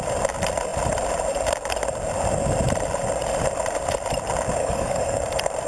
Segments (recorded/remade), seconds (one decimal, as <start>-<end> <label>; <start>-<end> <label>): 0.0-4.6 recorded; 4.6-5.2 remade; 5.2-5.7 recorded